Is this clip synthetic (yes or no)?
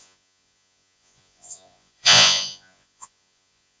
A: yes